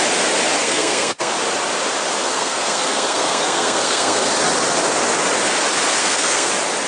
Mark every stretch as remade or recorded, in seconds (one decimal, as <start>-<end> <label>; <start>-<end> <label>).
0.0-0.6 recorded; 0.6-1.3 remade; 1.3-2.2 recorded; 2.2-4.3 remade; 4.3-6.0 recorded; 6.0-6.5 remade; 6.5-6.9 recorded